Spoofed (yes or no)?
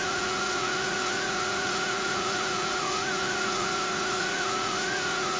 yes